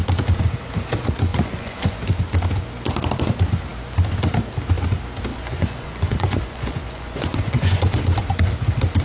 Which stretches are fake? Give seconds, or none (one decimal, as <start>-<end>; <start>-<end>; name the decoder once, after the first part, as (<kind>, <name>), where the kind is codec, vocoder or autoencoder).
1.3-2.0 (vocoder, Vocos); 5.3-8.0